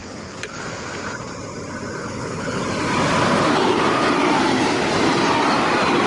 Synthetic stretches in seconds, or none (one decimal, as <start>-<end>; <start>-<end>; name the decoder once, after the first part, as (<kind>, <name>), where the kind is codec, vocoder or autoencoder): 0.0-0.6 (codec, HILCodec); 2.0-2.6